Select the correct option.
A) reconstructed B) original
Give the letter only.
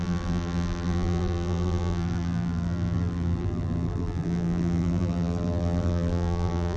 A